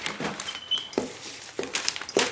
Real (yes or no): no